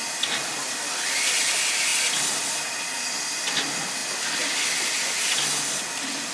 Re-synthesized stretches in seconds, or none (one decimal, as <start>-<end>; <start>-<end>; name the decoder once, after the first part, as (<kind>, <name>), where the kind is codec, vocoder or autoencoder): none